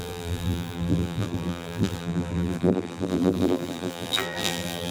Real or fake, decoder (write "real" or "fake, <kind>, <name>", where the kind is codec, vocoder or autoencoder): fake, vocoder, BigVGAN v2